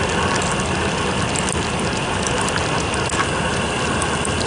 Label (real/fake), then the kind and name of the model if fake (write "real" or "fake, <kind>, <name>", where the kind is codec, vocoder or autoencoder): real